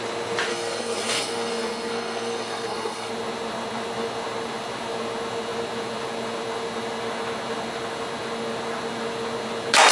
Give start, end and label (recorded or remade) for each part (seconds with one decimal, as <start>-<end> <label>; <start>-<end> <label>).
0.0-0.5 recorded; 0.5-3.1 remade; 3.1-9.9 recorded